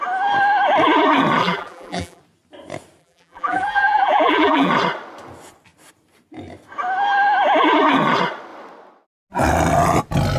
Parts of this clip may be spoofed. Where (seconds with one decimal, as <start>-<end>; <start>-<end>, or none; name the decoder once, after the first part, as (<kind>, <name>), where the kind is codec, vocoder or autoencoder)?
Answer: 1.4-2.2 (vocoder, BigVGAN v2); 3.0-4.7